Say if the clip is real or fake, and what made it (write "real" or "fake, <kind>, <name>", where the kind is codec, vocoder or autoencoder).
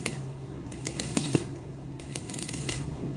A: fake, codec, SNAC